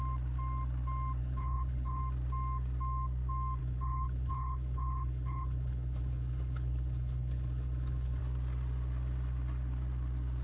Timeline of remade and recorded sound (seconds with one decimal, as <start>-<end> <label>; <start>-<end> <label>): 0.0-1.2 recorded; 1.2-2.0 remade; 2.0-3.6 recorded; 3.6-8.2 remade; 8.2-10.4 recorded